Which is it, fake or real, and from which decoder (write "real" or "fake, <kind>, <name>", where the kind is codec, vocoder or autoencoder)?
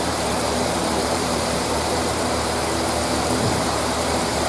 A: fake, vocoder, BigVGAN v2